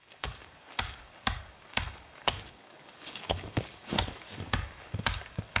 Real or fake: fake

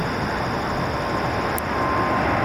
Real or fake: real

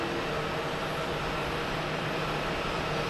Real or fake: real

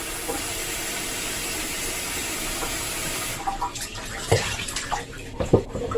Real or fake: fake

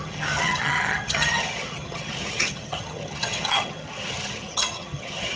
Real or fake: fake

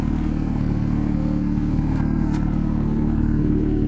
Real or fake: fake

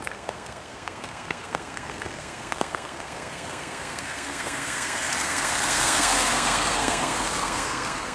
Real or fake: fake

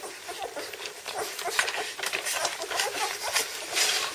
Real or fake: fake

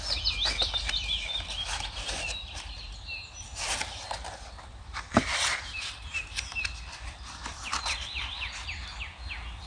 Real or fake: real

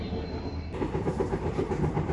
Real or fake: real